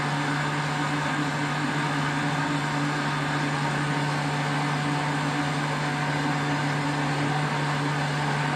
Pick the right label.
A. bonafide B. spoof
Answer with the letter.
A